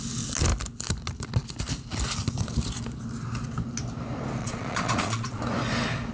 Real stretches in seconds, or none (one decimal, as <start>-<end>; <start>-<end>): 0.0-4.4; 5.4-6.1